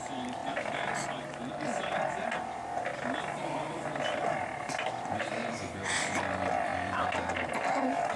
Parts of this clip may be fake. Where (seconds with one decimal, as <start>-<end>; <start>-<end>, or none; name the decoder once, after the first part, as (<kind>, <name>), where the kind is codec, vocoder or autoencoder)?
0.4-1.5 (vocoder, BigVGAN v2); 2.9-5.5; 6.7-7.5